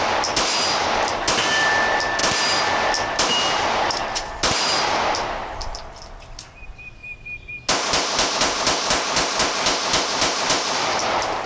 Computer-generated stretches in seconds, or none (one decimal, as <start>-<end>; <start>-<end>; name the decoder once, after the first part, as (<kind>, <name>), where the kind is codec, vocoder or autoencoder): none